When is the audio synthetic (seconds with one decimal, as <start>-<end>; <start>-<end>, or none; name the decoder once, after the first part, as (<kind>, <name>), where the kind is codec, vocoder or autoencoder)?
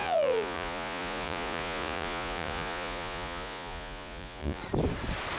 0.0-4.6 (vocoder, Vocos)